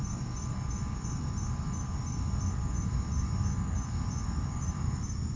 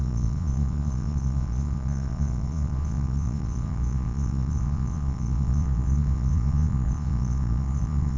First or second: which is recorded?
first